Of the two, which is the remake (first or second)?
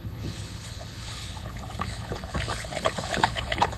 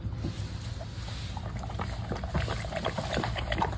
first